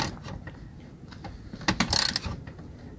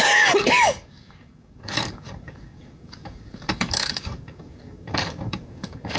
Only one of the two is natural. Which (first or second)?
first